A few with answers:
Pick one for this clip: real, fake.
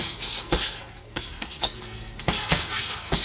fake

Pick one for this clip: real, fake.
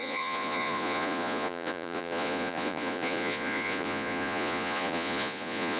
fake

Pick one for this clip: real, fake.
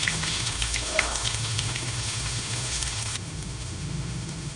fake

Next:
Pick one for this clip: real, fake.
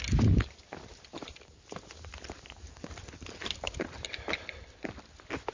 real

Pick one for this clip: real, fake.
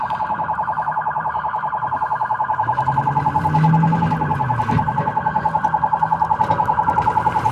real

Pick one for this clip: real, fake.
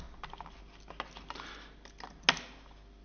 real